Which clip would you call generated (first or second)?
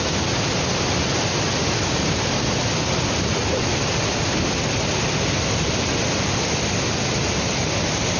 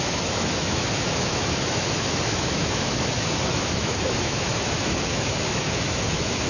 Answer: second